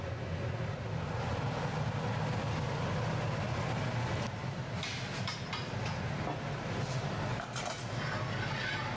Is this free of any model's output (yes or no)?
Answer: yes